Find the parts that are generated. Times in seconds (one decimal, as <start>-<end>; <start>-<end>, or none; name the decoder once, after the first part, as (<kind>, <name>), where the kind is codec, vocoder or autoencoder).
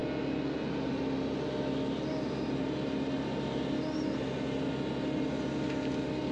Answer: none